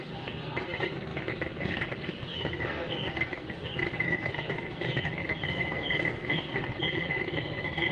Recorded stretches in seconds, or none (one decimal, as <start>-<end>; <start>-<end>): none